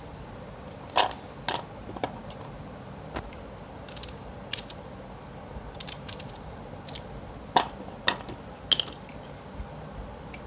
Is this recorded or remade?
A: recorded